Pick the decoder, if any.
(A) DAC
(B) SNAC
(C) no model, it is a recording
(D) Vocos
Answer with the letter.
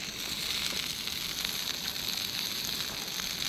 C